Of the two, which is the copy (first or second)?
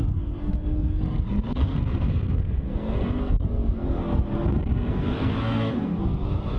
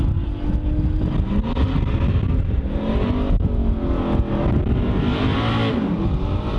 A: first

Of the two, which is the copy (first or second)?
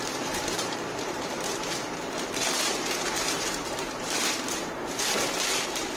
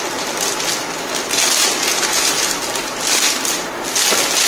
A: first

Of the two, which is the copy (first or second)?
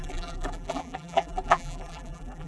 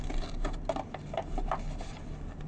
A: first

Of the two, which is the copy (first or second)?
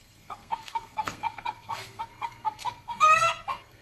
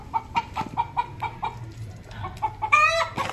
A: first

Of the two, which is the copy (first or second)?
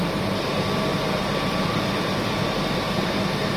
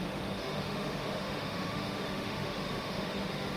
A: second